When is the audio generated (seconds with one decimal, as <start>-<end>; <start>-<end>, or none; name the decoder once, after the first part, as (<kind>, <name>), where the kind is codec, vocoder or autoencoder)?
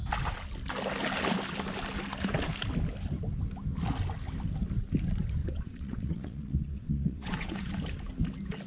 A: 5.4-7.7 (vocoder, WaveNeXt)